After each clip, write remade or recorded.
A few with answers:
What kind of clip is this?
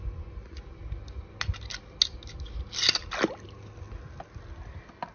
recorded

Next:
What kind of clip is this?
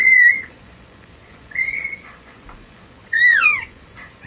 remade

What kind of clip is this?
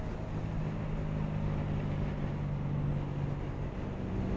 recorded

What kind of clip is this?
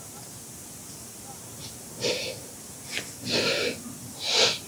recorded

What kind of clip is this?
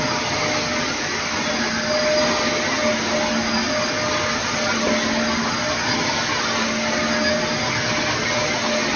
recorded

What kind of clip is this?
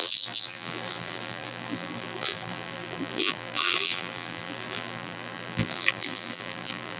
remade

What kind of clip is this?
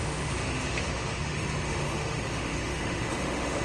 remade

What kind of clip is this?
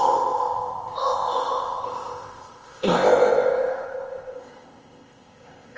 remade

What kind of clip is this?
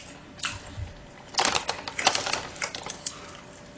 remade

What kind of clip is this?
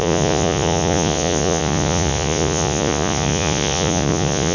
remade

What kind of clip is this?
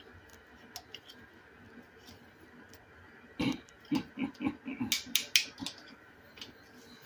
recorded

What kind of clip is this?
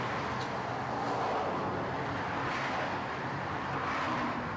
recorded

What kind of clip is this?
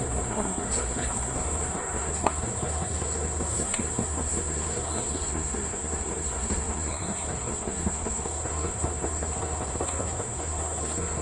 remade